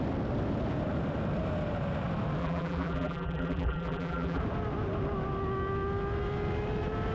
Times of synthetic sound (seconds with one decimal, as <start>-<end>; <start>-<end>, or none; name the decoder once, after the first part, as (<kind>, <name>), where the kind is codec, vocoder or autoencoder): 2.4-4.4 (vocoder, BigVGAN v2)